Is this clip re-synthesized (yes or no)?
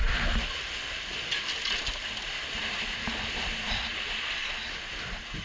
no